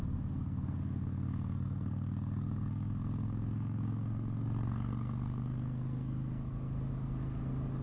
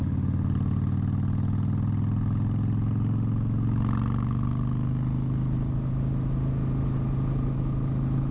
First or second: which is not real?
first